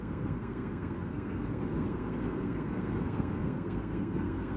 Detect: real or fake fake